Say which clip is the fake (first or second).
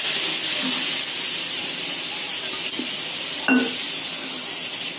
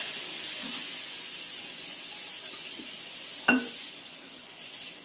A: second